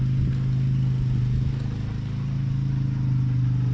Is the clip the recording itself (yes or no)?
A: yes